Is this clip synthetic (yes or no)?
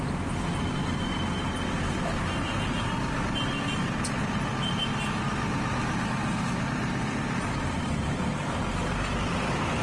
no